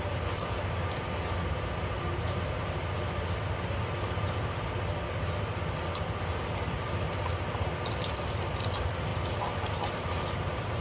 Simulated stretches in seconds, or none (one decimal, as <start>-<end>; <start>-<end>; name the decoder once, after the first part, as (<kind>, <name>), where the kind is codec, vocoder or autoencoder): none

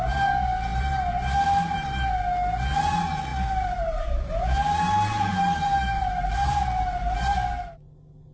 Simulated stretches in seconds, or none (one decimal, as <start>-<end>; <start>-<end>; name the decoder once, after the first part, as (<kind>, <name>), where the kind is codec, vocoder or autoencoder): 0.7-2.1 (vocoder, BigVGAN v2); 3.3-4.3; 5.3-7.7

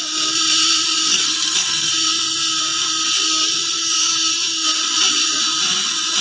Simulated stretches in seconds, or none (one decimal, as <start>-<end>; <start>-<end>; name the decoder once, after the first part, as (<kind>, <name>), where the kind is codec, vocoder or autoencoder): 1.1-1.9 (codec, SNAC)

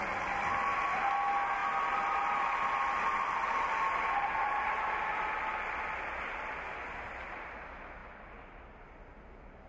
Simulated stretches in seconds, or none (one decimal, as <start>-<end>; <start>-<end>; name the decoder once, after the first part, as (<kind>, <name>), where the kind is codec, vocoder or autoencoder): none

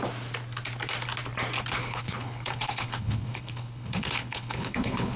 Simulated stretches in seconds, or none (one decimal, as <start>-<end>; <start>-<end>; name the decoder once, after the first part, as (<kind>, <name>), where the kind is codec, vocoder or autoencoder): 1.8-5.2 (codec, HILCodec)